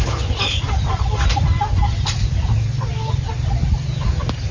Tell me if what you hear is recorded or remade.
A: recorded